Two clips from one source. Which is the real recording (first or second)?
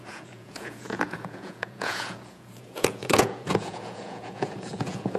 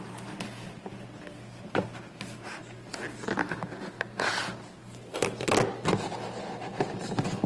second